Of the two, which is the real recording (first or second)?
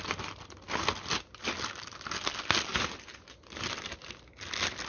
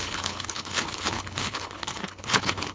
first